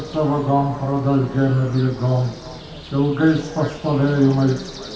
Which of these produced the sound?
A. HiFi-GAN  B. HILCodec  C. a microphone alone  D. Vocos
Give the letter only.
C